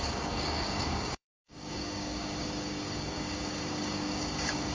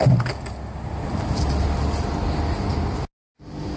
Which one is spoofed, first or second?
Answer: first